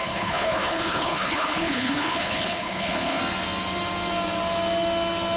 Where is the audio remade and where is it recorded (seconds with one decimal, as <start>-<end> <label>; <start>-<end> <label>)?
0.0-3.2 remade; 3.2-5.4 recorded